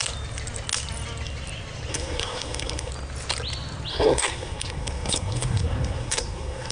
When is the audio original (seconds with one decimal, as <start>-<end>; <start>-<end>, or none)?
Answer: 0.0-1.9; 2.9-3.9